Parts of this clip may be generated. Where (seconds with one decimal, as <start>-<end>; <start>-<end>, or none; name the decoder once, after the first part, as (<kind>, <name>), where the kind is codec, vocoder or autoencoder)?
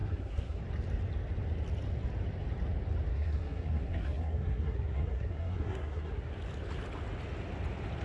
0.0-0.6 (codec, SNAC); 3.1-6.3